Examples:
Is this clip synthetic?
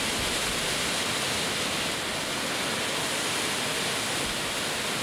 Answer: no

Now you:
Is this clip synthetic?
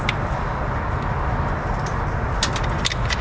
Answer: no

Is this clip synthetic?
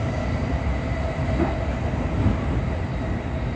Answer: no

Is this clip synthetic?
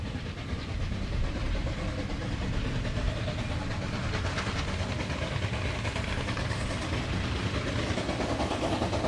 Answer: no